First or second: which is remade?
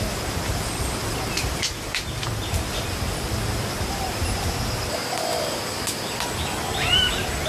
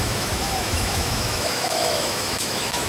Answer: second